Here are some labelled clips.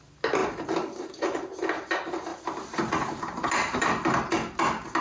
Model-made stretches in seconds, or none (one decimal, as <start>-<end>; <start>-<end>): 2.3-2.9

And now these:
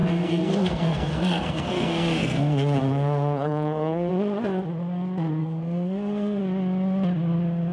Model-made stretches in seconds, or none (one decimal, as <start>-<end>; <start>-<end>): 0.0-4.1; 5.4-6.4

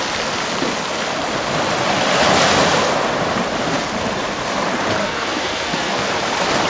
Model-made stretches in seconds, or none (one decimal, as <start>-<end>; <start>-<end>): 5.0-6.1